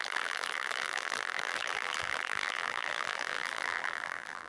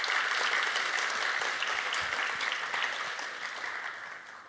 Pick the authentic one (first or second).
second